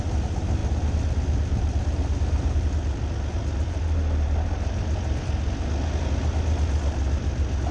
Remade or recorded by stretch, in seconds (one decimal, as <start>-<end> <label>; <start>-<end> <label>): 0.0-7.7 recorded

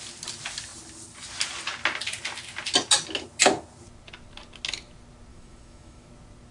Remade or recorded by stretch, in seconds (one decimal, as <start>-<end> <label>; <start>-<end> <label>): 0.0-5.3 recorded; 5.3-6.1 remade; 6.1-6.5 recorded

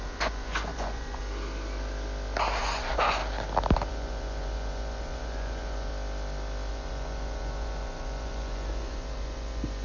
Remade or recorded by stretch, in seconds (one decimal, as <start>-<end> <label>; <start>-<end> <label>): 0.0-1.2 remade; 1.2-2.6 recorded; 2.6-3.2 remade; 3.2-3.9 recorded; 3.9-5.9 remade; 5.9-6.7 recorded; 6.7-9.8 remade

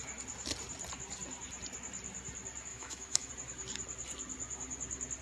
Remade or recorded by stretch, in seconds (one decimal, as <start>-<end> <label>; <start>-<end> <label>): 0.0-2.7 recorded; 2.7-3.3 remade; 3.3-5.2 recorded

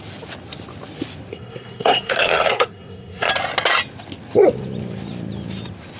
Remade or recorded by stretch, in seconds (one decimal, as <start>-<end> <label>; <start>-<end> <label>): 0.0-1.3 recorded; 1.3-3.3 remade; 3.3-6.0 recorded